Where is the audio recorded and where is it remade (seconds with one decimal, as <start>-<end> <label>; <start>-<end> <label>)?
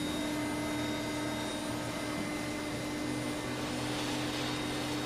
0.0-5.1 recorded